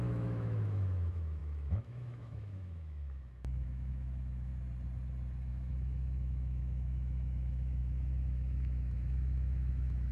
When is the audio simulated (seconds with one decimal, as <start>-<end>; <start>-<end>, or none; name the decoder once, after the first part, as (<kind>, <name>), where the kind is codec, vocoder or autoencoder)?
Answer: 0.0-4.5 (autoencoder, DAC-VAE); 5.5-10.1